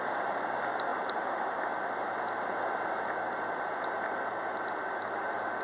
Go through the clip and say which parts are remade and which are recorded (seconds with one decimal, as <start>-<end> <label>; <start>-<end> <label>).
0.0-5.6 recorded